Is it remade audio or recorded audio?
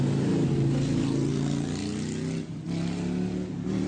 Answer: recorded